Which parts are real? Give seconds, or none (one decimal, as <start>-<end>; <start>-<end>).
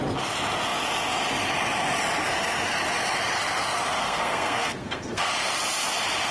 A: 0.0-4.0; 5.3-6.3